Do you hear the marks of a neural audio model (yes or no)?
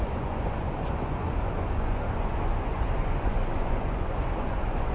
yes